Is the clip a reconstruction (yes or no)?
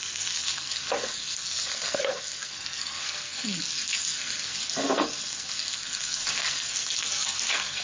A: yes